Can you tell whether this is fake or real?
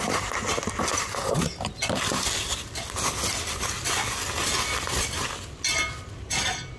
real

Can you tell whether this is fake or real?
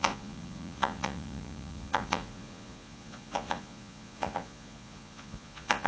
fake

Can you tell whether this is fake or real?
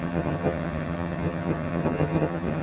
fake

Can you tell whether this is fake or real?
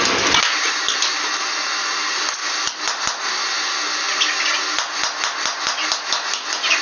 real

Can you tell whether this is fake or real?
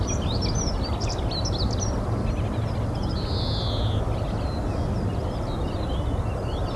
real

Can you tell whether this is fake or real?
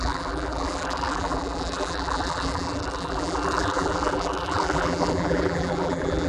fake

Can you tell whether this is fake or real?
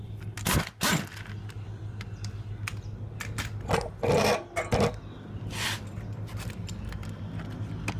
real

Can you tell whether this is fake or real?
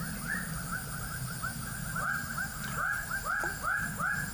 real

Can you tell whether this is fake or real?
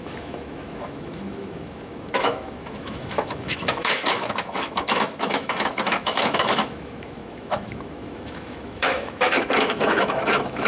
fake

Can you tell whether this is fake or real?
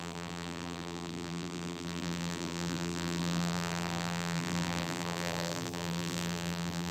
fake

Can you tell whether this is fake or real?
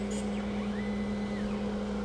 real